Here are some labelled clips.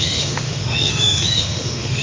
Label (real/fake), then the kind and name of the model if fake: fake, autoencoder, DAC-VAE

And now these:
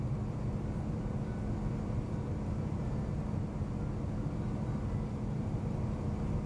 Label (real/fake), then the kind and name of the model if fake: real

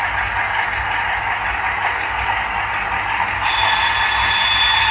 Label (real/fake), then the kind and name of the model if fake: real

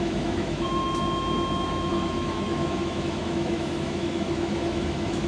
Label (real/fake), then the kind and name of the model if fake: fake, autoencoder, DAC-VAE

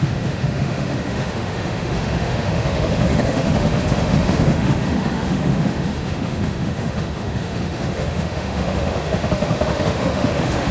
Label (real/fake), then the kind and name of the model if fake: fake, autoencoder, DAC-VAE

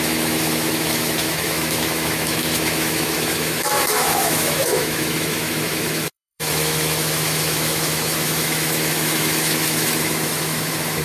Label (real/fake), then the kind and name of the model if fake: fake, autoencoder, DAC-VAE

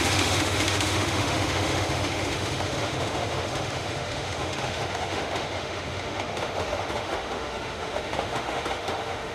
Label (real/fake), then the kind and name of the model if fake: fake, autoencoder, DAC-VAE